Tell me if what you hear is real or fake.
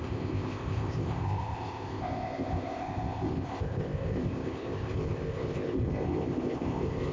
fake